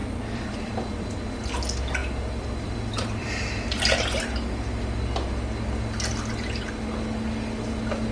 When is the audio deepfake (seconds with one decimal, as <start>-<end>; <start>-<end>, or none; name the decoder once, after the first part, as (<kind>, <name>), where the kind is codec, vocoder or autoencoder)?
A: 0.0-1.4 (vocoder, BigVGAN v2); 2.0-4.2